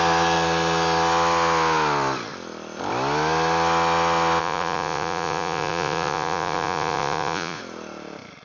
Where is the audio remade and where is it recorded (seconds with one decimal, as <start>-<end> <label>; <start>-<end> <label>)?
0.0-4.4 recorded; 4.4-7.6 remade; 7.6-8.4 recorded